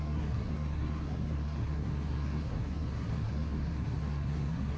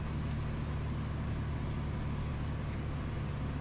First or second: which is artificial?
first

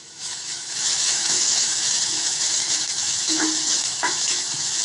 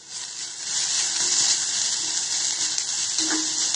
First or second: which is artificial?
first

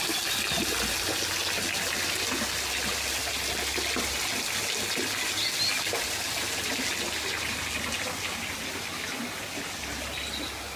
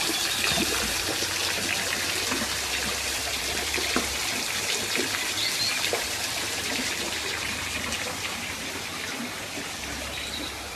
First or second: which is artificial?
second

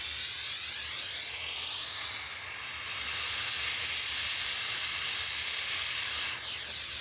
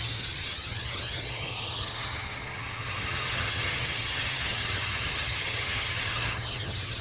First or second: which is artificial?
second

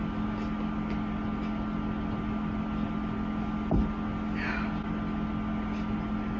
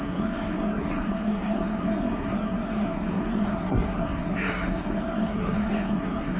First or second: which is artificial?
second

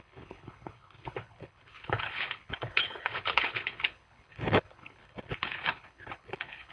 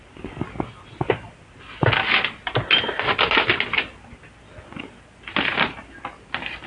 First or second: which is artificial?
first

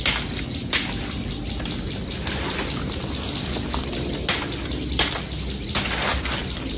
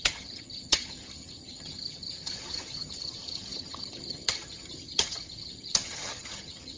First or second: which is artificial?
second